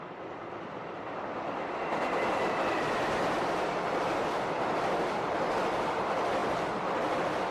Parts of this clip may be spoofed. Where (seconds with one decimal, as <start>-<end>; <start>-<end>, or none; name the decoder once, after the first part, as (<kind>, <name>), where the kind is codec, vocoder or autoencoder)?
0.0-7.5 (vocoder, BigVGAN v2)